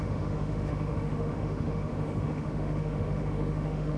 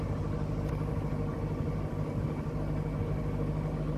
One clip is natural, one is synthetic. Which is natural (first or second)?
second